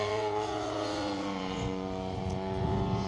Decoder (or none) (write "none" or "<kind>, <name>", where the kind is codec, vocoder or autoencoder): vocoder, Vocos